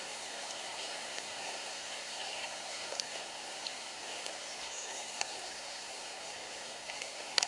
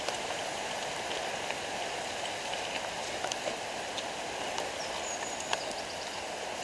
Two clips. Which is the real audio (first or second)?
second